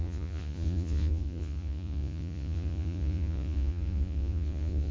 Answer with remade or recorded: remade